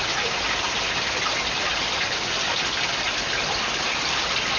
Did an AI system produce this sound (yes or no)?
no